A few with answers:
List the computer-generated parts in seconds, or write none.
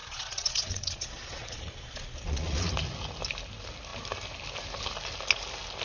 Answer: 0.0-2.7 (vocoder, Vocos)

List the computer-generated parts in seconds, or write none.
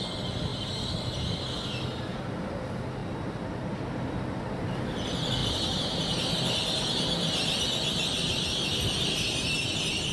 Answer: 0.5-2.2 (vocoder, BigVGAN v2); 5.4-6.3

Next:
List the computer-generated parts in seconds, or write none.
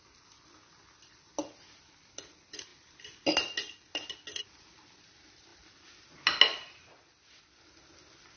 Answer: none